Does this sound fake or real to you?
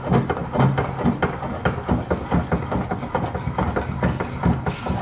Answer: real